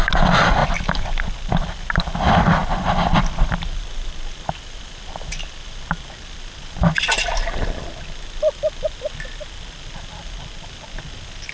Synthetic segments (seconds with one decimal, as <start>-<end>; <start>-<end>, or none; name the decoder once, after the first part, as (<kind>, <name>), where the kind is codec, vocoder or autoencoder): none